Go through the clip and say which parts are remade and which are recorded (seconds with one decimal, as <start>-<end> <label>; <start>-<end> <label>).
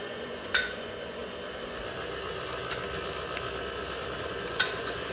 0.0-1.2 remade; 1.2-4.3 recorded; 4.3-5.1 remade